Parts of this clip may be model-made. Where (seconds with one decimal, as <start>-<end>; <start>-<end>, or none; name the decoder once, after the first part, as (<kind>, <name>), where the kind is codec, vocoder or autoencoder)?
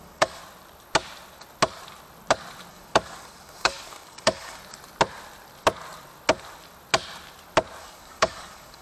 0.0-0.4 (codec, DAC); 2.7-4.6; 7.8-8.8